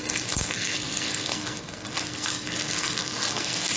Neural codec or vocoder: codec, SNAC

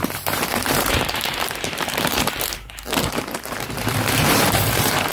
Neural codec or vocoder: vocoder, BigVGAN v2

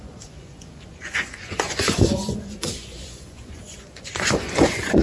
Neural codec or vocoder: vocoder, Vocos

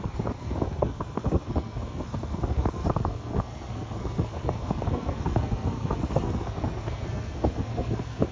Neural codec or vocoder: codec, SNAC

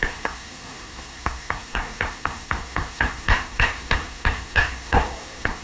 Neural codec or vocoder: codec, SNAC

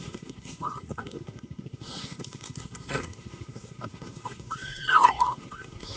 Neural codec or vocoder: codec, SNAC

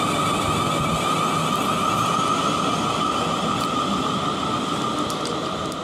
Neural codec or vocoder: none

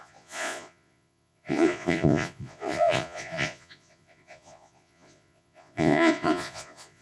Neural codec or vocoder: vocoder, Vocos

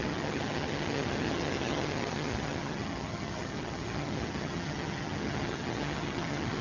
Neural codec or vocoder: vocoder, HiFi-GAN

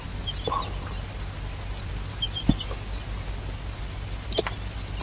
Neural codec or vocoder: none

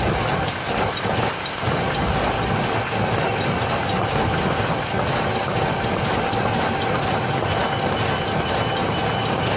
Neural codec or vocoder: none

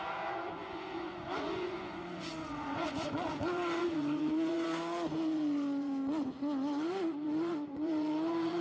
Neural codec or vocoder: vocoder, Vocos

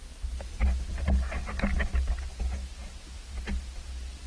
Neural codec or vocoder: none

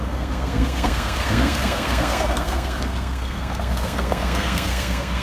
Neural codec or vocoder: codec, SNAC